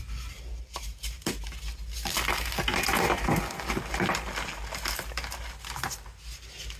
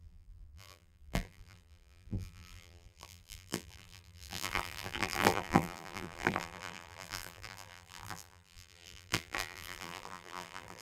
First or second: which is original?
first